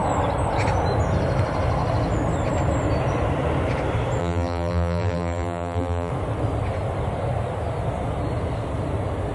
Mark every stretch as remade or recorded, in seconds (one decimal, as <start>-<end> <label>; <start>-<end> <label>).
0.0-4.2 recorded; 4.2-6.1 remade; 6.1-9.3 recorded